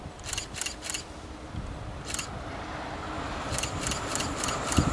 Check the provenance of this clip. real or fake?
fake